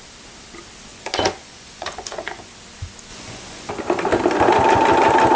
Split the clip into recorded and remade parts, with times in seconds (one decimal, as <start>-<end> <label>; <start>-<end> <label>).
0.0-0.9 recorded; 0.9-2.5 remade; 2.5-3.1 recorded; 3.1-3.7 remade; 3.7-5.4 recorded